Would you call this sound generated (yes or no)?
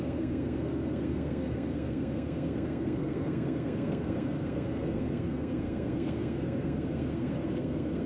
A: yes